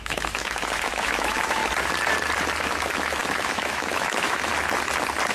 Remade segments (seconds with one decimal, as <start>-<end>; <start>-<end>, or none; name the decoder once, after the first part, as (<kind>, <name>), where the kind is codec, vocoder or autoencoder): 0.0-1.6 (autoencoder, DAC-VAE); 2.6-4.5